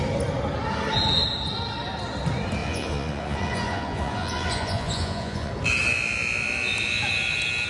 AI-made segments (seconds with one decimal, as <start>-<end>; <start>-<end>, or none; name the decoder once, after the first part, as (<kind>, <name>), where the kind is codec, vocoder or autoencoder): 2.6-5.5 (vocoder, Vocos)